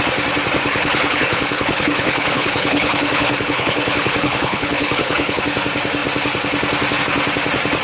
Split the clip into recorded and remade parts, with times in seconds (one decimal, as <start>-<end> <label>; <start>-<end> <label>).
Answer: 0.0-0.7 recorded; 0.7-5.4 remade; 5.4-7.8 recorded